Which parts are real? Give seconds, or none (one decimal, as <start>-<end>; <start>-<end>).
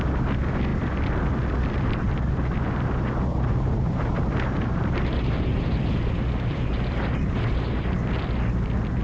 0.0-3.3; 7.8-9.0